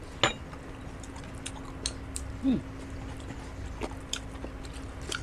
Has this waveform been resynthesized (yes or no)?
no